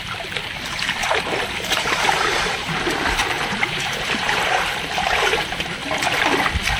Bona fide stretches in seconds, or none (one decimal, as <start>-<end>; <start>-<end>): 0.0-1.0; 4.6-6.8